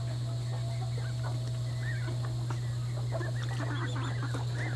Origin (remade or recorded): recorded